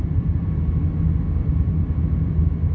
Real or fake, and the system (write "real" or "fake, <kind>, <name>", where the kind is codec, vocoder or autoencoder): real